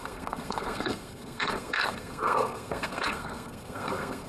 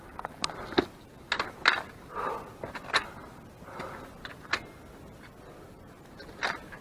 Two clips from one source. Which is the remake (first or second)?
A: first